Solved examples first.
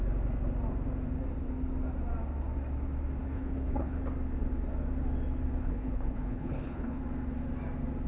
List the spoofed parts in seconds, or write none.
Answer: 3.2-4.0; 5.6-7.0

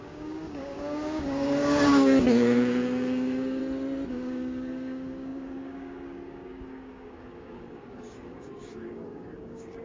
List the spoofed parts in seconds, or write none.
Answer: 0.0-3.6; 4.1-9.8

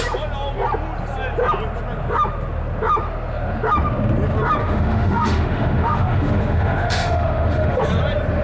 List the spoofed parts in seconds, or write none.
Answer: 4.6-7.8

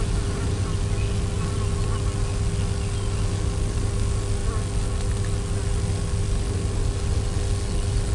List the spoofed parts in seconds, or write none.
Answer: none

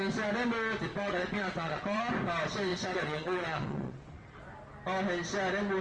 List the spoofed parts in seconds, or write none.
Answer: 0.9-2.1; 2.7-4.4

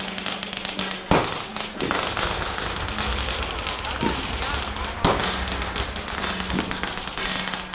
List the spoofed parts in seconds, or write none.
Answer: none

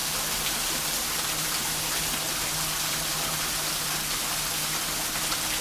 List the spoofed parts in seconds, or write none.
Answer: none